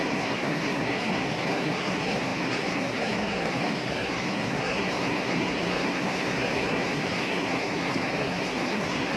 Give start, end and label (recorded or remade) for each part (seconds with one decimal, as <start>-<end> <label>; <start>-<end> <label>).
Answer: 0.0-9.2 remade